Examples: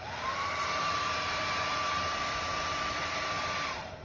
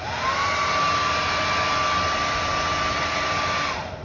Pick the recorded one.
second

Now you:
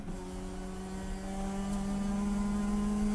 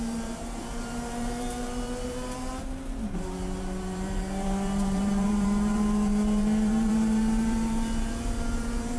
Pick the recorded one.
first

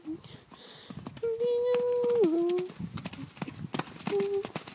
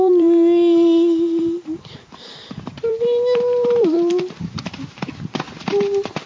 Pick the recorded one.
first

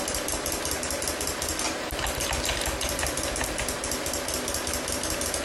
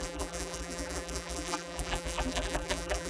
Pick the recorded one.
first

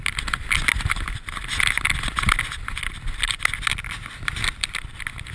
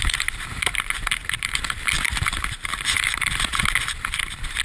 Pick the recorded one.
first